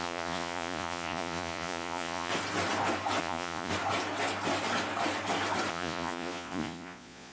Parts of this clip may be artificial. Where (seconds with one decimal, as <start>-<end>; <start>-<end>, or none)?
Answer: 0.0-2.3; 3.2-3.7; 5.7-7.3